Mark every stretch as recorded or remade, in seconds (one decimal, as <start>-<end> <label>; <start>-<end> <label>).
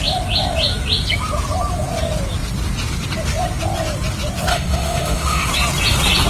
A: 0.0-4.5 recorded; 4.5-5.5 remade; 5.5-6.3 recorded